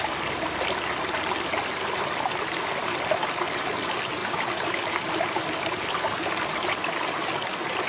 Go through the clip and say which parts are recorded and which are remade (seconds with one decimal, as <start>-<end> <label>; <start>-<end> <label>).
0.0-7.9 recorded